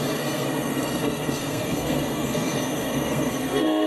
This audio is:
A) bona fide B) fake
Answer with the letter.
B